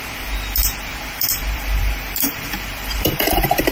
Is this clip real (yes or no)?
no